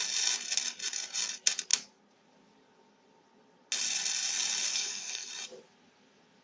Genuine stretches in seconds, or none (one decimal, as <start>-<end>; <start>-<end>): 0.0-4.7; 5.3-6.4